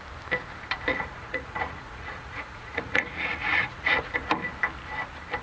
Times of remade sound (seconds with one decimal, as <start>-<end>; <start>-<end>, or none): 0.9-4.1